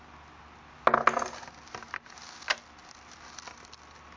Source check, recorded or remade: recorded